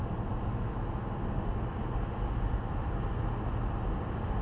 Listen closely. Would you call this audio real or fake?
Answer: real